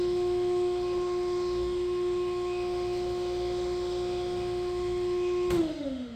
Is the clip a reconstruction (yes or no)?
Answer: yes